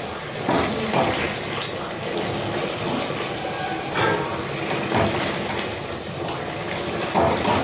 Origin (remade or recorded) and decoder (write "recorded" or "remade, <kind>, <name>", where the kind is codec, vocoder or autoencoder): recorded